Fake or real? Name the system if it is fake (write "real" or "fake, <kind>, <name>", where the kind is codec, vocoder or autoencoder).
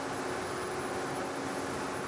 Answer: real